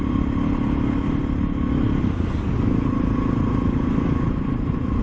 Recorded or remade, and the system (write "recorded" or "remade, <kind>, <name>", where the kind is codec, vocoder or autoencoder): recorded